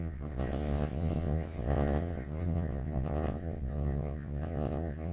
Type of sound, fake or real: fake